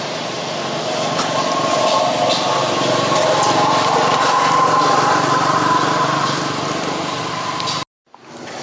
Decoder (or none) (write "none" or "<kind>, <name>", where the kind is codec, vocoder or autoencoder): none